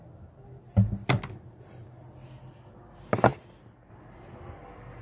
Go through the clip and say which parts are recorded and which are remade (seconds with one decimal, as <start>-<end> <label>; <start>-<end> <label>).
0.0-5.0 recorded